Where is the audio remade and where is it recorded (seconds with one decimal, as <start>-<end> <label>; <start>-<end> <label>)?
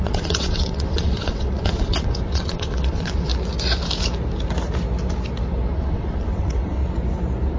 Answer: 0.0-3.3 remade; 3.3-5.8 recorded; 5.8-6.8 remade; 6.8-7.6 recorded